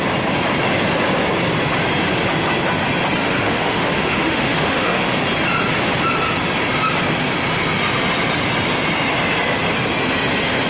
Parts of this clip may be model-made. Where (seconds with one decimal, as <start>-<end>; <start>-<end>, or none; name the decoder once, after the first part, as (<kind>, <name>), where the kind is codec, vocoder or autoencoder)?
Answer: 3.2-5.2 (autoencoder, DAC-VAE)

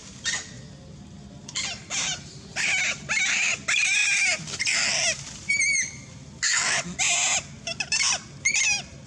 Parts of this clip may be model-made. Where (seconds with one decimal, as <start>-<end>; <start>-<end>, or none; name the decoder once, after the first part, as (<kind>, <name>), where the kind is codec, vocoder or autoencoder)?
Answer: none

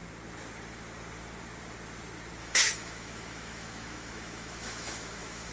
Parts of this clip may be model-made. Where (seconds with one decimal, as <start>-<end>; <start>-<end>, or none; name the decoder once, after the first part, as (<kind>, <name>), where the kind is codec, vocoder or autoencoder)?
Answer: 2.4-5.5 (autoencoder, DAC-VAE)

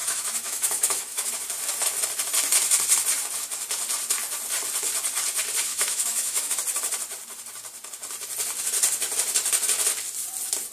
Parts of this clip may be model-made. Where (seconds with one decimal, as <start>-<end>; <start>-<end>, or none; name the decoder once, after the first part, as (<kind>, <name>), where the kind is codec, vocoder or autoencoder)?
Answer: 0.0-1.3 (autoencoder, DAC-VAE); 5.7-6.5

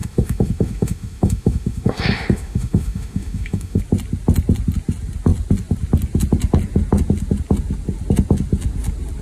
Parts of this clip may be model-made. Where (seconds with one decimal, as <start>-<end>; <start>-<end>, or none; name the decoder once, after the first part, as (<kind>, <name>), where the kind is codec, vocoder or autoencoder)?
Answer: 0.0-3.8 (autoencoder, DAC-VAE)

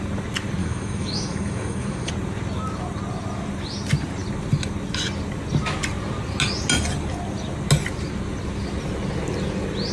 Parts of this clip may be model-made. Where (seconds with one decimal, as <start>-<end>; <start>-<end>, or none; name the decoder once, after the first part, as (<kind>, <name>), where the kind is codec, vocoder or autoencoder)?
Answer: 0.6-2.1 (autoencoder, DAC-VAE)

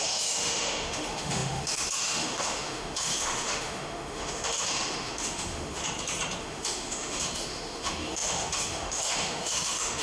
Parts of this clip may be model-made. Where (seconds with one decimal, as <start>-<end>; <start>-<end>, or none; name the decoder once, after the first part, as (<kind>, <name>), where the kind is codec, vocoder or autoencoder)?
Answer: 0.0-5.8 (autoencoder, DAC-VAE); 6.4-10.0